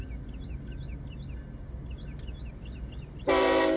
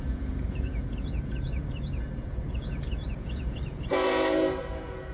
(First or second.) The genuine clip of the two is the first